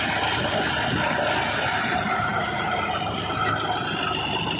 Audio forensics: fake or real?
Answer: real